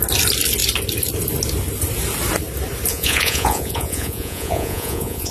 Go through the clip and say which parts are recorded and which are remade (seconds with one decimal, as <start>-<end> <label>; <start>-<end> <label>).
0.0-2.9 recorded; 2.9-5.3 remade